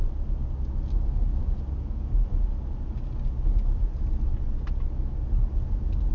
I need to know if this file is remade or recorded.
recorded